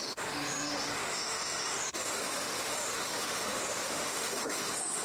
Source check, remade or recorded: remade